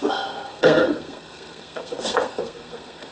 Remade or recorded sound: remade